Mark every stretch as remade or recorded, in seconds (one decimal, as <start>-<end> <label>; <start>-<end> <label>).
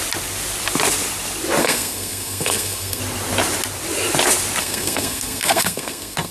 0.0-1.6 recorded; 1.6-3.0 remade; 3.0-4.6 recorded; 4.6-6.3 remade